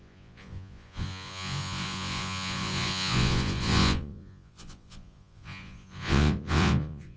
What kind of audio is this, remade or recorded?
remade